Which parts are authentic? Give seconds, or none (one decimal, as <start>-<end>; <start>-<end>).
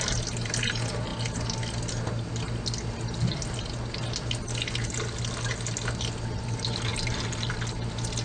0.0-8.2